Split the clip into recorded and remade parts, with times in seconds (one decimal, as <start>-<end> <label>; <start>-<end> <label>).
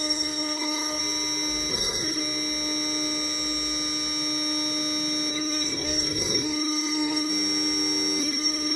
0.0-1.0 remade; 1.0-1.7 recorded; 1.7-2.2 remade; 2.2-5.3 recorded; 5.3-7.3 remade; 7.3-8.2 recorded; 8.2-8.8 remade